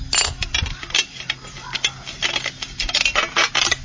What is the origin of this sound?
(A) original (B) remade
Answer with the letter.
A